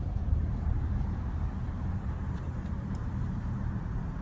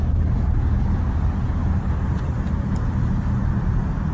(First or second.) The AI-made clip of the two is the first